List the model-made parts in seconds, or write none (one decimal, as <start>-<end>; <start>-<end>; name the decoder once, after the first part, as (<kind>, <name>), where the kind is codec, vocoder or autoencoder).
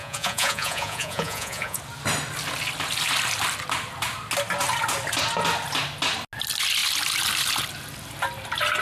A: 0.0-1.8 (vocoder, Vocos)